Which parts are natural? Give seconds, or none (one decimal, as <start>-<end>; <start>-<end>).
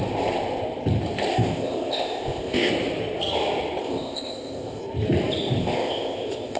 0.0-1.3; 2.7-3.8; 4.8-5.6